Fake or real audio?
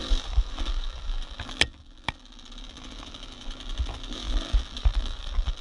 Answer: fake